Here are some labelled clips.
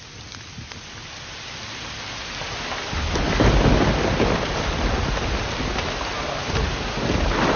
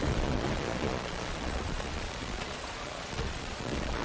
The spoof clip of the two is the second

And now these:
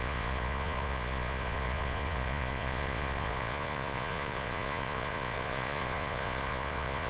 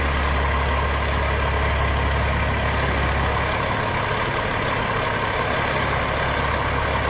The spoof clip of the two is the first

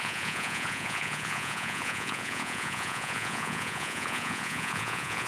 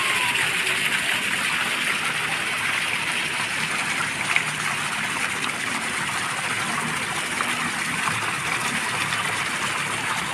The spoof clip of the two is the first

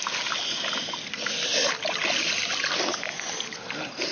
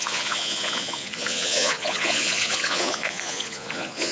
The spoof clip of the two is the second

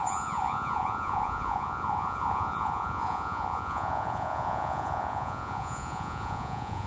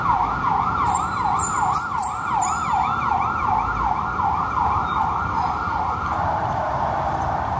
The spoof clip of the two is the first